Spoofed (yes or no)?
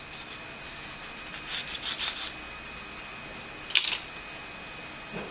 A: no